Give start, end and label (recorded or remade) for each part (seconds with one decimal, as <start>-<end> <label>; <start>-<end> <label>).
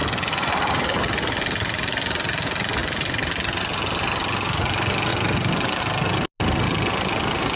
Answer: 0.0-2.8 recorded; 2.8-3.6 remade; 3.6-5.1 recorded; 5.1-5.8 remade; 5.8-7.6 recorded